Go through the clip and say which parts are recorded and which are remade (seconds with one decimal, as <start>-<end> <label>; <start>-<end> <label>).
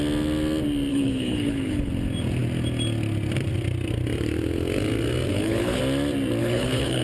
0.0-0.9 recorded; 0.9-1.9 remade; 1.9-5.3 recorded; 5.3-5.8 remade; 5.8-6.4 recorded; 6.4-7.0 remade